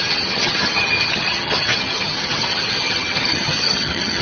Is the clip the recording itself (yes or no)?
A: no